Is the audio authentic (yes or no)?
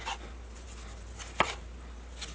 yes